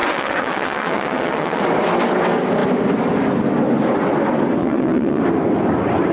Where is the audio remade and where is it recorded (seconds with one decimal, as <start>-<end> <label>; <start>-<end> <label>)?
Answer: 0.0-1.6 remade; 1.6-4.6 recorded; 4.6-5.2 remade; 5.2-6.1 recorded

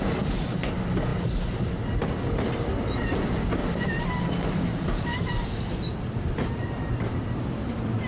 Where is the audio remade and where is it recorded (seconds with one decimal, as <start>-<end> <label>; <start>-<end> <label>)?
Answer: 0.0-3.6 recorded; 3.6-7.5 remade; 7.5-8.1 recorded

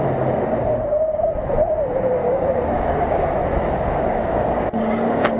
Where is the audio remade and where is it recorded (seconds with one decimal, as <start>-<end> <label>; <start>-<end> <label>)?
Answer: 0.0-2.2 recorded; 2.2-5.4 remade

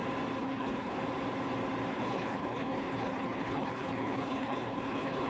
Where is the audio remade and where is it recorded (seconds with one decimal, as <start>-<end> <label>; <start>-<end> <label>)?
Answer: 0.0-0.4 recorded; 0.4-1.0 remade; 1.0-1.9 recorded; 1.9-5.3 remade

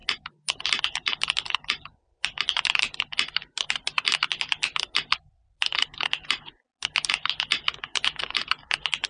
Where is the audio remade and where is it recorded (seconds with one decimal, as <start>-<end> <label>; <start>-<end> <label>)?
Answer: 0.0-9.1 recorded